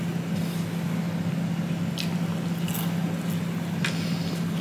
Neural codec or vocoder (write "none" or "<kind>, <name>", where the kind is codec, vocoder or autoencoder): none